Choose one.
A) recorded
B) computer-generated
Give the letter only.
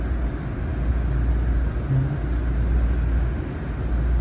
A